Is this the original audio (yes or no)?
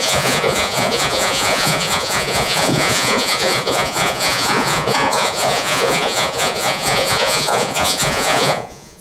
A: no